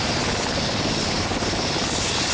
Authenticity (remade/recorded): recorded